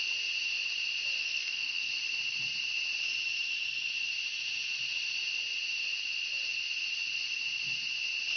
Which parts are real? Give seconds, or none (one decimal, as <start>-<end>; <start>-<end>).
0.0-1.2; 1.9-8.4